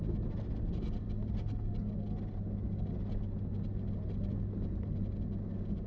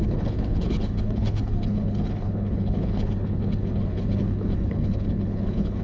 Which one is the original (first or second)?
first